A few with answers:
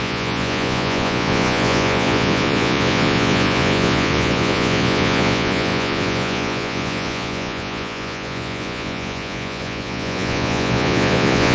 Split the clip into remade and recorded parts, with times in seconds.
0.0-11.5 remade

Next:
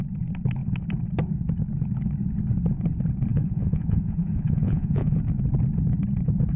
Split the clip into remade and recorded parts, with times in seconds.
0.0-3.3 recorded; 3.3-5.2 remade; 5.2-6.6 recorded

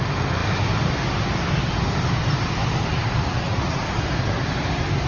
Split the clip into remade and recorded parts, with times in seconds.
0.0-2.9 recorded; 2.9-3.8 remade; 3.8-5.1 recorded

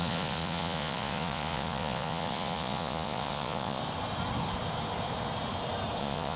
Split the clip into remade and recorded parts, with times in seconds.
0.0-3.8 remade; 3.8-6.0 recorded; 6.0-6.4 remade

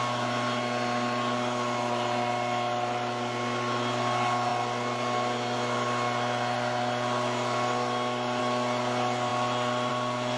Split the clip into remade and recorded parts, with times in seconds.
0.0-10.4 recorded

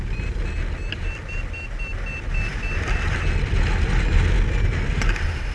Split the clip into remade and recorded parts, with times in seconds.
0.0-5.5 recorded

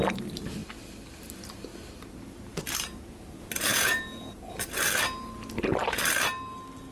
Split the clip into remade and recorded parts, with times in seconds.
0.0-3.7 recorded; 3.7-4.5 remade; 4.5-6.9 recorded

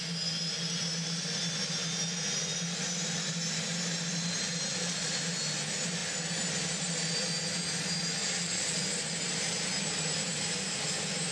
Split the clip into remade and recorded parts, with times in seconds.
0.0-4.7 recorded; 4.7-5.2 remade; 5.2-8.2 recorded; 8.2-8.8 remade; 8.8-11.3 recorded